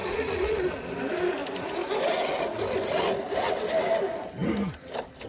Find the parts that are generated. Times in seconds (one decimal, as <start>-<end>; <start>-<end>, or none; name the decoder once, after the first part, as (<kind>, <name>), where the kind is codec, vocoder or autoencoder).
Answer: 0.0-0.6 (vocoder, Vocos)